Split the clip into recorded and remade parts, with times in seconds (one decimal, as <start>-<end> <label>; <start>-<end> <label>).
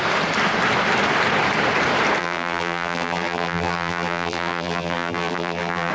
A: 0.0-2.2 recorded; 2.2-5.9 remade